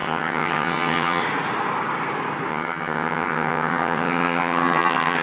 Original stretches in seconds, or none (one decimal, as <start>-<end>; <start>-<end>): 1.2-2.5